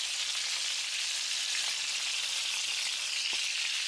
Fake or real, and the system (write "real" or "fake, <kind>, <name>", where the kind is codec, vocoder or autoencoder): real